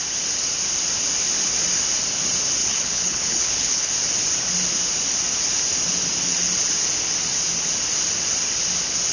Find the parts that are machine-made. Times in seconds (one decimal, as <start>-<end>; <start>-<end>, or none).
2.6-3.9